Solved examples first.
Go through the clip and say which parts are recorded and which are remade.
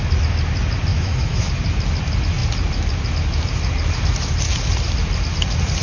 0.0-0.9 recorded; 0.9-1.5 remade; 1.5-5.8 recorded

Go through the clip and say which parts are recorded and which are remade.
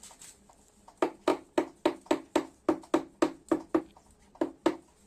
0.0-5.1 recorded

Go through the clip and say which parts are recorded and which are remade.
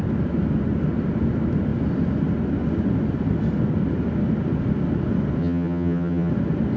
0.0-5.4 recorded; 5.4-6.3 remade; 6.3-6.8 recorded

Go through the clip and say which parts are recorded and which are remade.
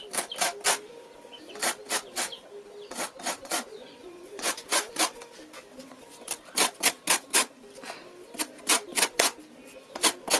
0.0-3.4 recorded; 3.4-5.2 remade; 5.2-8.9 recorded; 8.9-9.4 remade; 9.4-10.4 recorded